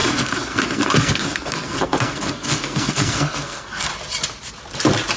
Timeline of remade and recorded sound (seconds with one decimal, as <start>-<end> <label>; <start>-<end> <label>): 0.0-3.9 remade; 3.9-5.2 recorded